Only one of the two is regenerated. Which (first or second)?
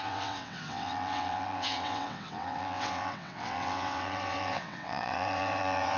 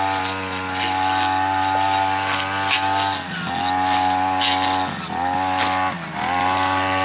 first